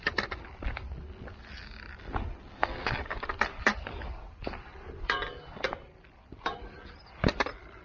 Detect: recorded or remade recorded